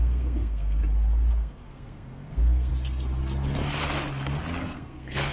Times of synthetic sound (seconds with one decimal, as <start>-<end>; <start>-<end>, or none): 0.0-0.8; 1.3-2.7; 4.6-5.3

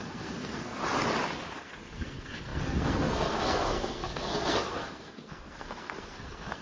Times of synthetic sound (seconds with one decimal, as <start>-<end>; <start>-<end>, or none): 0.0-0.8; 1.6-6.6

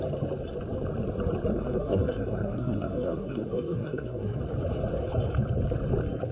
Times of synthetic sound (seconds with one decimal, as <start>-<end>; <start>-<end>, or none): 1.5-4.4

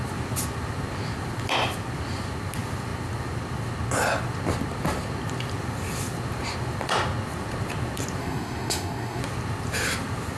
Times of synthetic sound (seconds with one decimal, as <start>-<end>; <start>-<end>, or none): 8.2-9.2

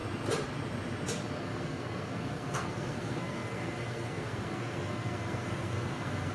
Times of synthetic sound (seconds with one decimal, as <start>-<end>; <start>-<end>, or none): 1.4-6.3